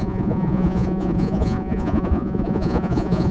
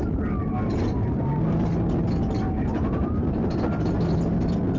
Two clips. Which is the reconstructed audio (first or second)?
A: first